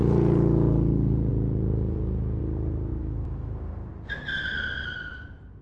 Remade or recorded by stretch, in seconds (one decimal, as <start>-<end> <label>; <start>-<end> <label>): 0.0-2.9 recorded; 2.9-3.9 remade; 3.9-4.5 recorded; 4.5-5.6 remade